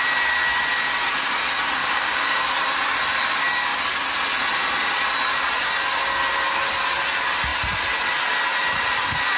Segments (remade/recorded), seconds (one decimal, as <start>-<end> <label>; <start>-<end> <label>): 0.0-1.8 recorded; 1.8-2.4 remade; 2.4-9.4 recorded